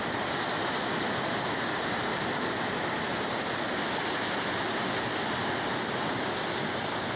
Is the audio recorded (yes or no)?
yes